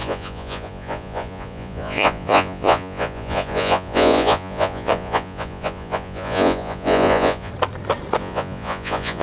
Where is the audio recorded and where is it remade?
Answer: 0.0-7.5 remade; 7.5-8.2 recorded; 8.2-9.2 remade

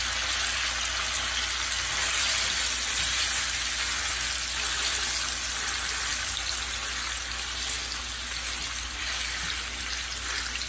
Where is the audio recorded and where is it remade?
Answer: 0.0-10.7 recorded

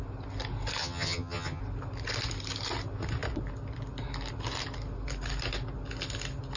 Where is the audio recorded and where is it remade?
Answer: 0.0-0.8 recorded; 0.8-1.6 remade; 1.6-6.6 recorded

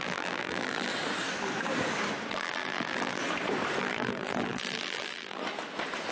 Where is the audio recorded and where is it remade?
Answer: 0.0-0.9 remade; 0.9-2.3 recorded; 2.3-3.2 remade; 3.2-3.8 recorded; 3.8-5.4 remade; 5.4-6.1 recorded